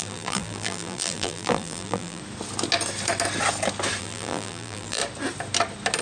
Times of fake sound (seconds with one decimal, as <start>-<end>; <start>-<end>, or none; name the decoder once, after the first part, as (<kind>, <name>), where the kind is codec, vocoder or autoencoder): 0.0-2.2 (vocoder, BigVGAN v2); 4.0-5.0